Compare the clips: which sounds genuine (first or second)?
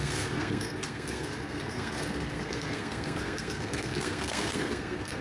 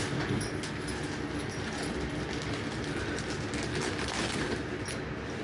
second